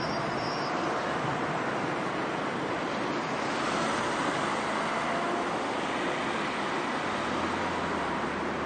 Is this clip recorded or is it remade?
recorded